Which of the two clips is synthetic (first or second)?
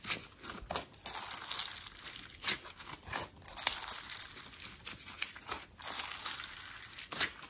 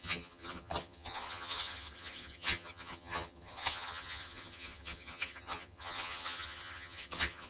second